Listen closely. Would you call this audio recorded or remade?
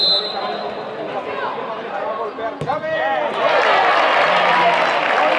recorded